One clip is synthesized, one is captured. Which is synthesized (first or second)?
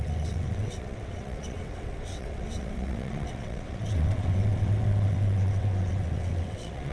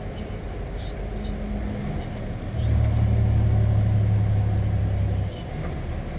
first